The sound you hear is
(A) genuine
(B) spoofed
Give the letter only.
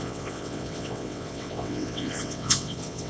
B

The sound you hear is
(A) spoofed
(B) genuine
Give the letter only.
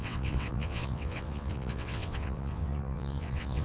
A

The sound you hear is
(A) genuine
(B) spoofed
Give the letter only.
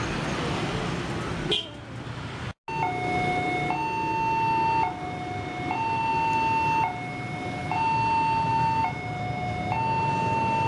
A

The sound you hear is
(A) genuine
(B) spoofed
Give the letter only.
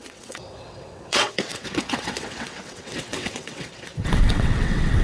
B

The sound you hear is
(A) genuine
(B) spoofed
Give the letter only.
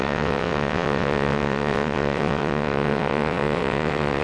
B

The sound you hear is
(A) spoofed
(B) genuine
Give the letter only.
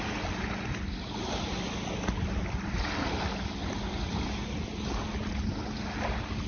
B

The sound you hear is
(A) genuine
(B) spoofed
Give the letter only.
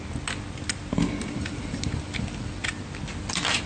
A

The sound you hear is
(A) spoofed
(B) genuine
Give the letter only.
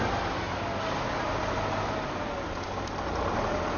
B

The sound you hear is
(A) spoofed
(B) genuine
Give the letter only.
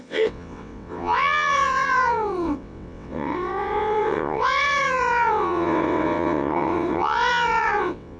A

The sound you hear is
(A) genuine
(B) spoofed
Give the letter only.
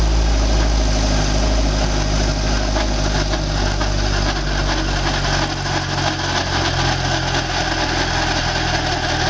A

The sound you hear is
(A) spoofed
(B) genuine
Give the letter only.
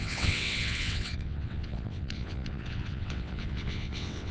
A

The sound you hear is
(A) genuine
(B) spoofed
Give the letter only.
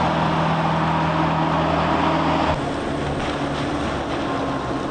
A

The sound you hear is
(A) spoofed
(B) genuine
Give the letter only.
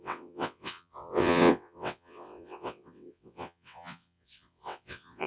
A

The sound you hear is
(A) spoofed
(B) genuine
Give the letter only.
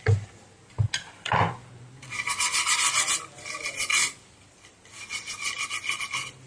B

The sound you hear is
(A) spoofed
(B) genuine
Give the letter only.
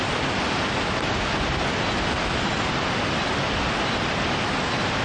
B